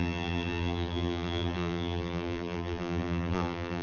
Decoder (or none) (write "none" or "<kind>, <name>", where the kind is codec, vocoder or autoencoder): vocoder, BigVGAN v2